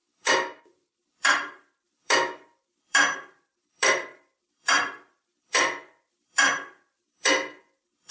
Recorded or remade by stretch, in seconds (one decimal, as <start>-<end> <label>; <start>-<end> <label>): 0.0-8.1 remade